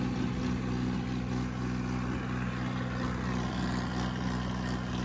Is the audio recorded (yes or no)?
yes